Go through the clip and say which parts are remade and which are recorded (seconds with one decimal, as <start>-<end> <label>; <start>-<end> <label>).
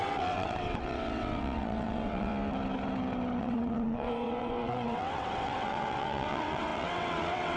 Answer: 0.0-2.3 remade; 2.3-3.4 recorded; 3.4-7.6 remade